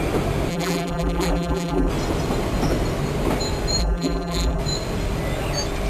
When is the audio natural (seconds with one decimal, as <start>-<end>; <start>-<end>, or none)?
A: 0.0-0.5; 1.9-3.8; 4.6-5.9